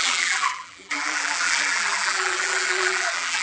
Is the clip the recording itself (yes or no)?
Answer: no